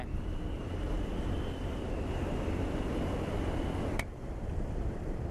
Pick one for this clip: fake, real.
fake